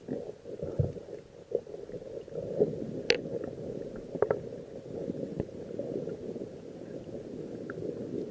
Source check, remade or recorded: recorded